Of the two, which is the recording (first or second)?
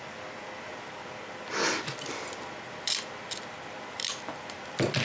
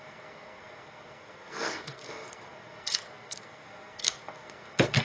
first